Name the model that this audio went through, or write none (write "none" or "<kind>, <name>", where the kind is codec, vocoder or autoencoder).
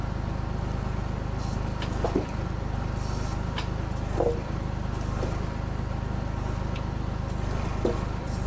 none